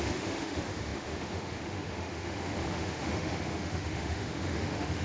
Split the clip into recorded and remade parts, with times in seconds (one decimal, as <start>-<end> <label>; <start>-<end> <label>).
0.0-5.0 remade